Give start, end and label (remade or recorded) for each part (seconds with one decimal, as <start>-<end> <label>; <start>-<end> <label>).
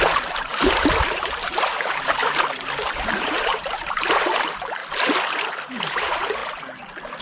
0.0-2.2 remade; 2.2-2.9 recorded; 2.9-4.8 remade; 4.8-5.6 recorded; 5.6-6.4 remade; 6.4-7.2 recorded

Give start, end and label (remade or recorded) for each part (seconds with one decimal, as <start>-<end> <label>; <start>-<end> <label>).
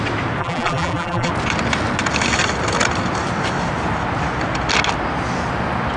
0.0-0.4 recorded; 0.4-1.3 remade; 1.3-6.0 recorded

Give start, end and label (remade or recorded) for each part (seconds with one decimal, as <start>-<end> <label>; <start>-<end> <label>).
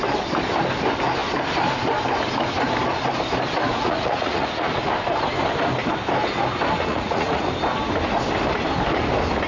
0.0-3.7 recorded; 3.7-4.9 remade; 4.9-6.9 recorded; 6.9-7.5 remade; 7.5-9.5 recorded